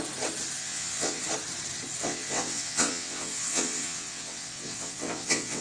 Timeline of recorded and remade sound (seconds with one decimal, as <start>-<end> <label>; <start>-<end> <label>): 0.0-0.6 recorded; 0.6-1.2 remade; 1.2-2.0 recorded; 2.0-5.6 remade